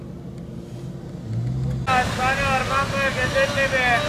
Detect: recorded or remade recorded